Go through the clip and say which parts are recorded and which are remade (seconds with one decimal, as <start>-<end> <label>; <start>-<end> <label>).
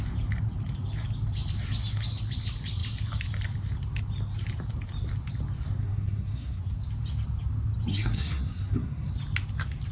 0.0-5.8 recorded; 5.8-6.6 remade; 6.6-7.9 recorded; 7.9-9.1 remade; 9.1-9.9 recorded